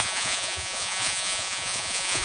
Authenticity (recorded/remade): remade